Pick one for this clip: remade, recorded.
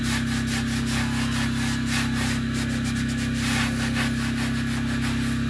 recorded